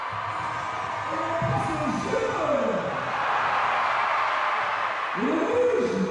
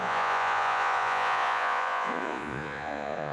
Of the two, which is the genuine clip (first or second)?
first